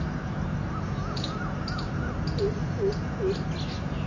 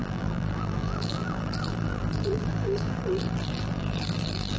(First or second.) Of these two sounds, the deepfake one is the second